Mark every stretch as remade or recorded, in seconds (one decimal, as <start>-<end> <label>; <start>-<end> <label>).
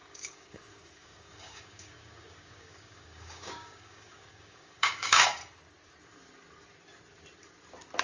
0.0-5.4 remade; 5.4-8.0 recorded